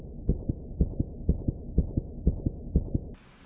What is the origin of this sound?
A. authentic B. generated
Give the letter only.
A